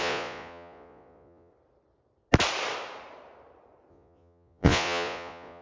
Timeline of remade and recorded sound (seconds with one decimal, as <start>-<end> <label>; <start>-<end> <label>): 0.0-1.5 remade; 1.5-3.9 recorded; 3.9-5.6 remade